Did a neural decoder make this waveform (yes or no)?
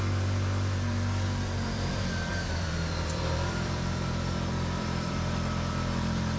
yes